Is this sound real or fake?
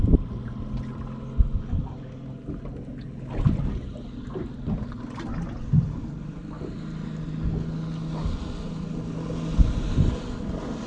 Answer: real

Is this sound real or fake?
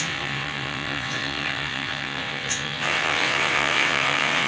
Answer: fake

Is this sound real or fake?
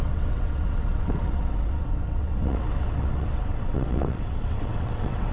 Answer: fake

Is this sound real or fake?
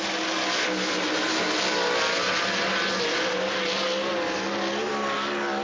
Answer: real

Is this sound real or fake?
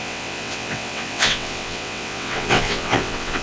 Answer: fake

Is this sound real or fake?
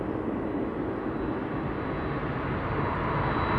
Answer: real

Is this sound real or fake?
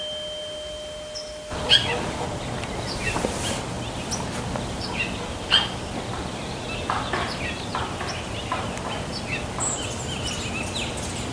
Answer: real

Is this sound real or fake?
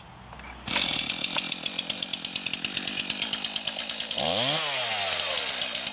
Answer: real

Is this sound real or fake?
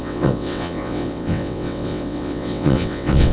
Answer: fake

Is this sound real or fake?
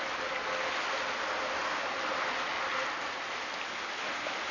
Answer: real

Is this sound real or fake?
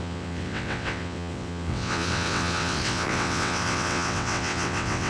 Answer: fake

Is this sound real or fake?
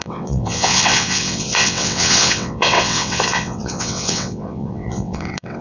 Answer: fake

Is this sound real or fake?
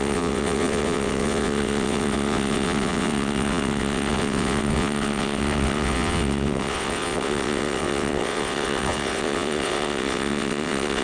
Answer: fake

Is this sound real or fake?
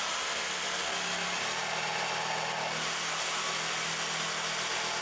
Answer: real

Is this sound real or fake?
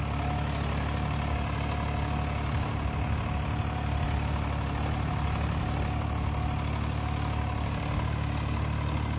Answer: real